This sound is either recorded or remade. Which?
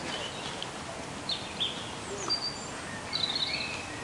recorded